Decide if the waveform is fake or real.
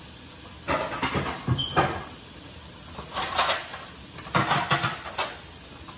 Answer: real